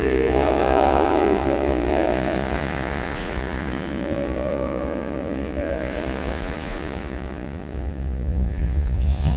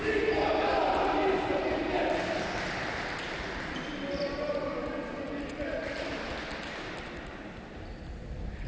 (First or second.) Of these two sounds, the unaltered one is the second